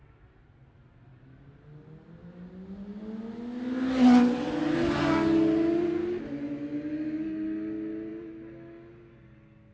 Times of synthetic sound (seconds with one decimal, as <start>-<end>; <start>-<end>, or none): none